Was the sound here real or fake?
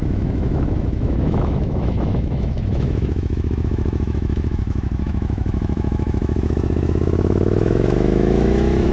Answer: fake